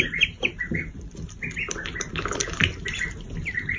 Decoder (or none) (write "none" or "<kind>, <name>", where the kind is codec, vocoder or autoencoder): none